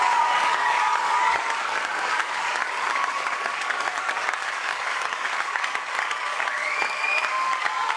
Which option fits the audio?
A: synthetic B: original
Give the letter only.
A